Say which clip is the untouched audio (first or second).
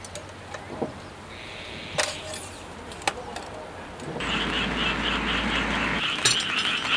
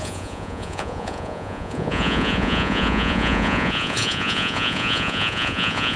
first